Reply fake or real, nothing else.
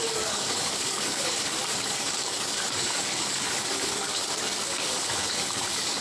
fake